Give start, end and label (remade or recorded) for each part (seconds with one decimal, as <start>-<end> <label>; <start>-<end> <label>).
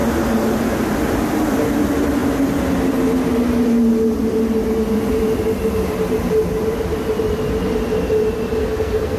0.0-8.6 recorded; 8.6-9.2 remade